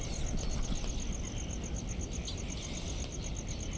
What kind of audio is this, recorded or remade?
recorded